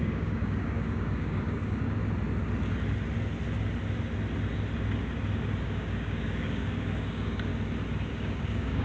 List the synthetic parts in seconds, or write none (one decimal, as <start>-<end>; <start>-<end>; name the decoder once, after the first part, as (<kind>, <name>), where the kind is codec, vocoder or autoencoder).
0.0-2.0 (codec, DAC); 5.6-7.5; 8.1-8.8